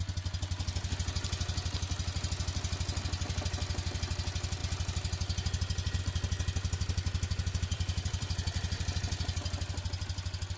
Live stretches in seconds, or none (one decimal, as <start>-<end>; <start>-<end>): 0.0-7.7; 9.0-10.6